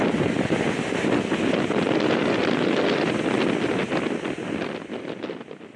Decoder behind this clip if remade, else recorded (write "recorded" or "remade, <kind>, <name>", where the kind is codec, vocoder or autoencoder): recorded